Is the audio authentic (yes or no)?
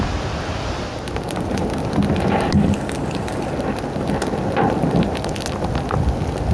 yes